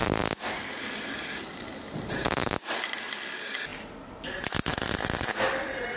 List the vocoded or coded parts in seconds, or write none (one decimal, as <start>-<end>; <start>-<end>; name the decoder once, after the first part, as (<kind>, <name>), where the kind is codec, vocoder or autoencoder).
none